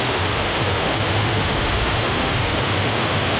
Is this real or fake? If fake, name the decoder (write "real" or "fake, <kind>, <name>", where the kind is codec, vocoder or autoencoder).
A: fake, autoencoder, DAC-VAE